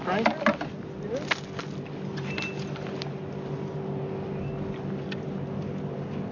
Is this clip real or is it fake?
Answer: real